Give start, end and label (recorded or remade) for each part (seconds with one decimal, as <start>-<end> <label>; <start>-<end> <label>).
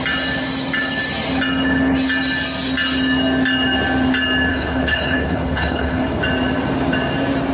0.0-4.5 recorded; 4.5-6.2 remade; 6.2-7.5 recorded